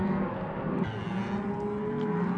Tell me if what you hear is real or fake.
real